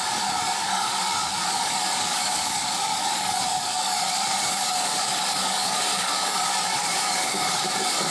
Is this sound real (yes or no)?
no